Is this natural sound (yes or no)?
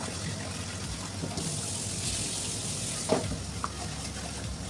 yes